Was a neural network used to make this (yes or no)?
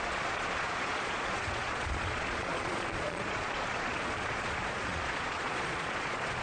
yes